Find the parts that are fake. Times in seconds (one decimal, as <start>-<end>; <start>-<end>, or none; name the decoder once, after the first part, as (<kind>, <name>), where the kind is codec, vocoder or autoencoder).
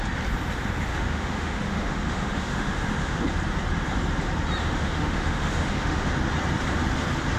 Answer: 0.9-3.2 (autoencoder, DAC-VAE); 4.6-6.1